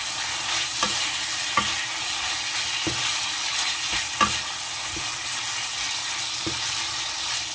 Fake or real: real